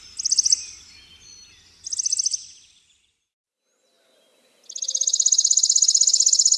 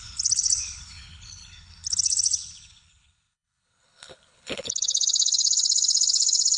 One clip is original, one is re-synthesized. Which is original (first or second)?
first